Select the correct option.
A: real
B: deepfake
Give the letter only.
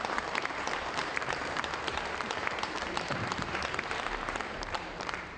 B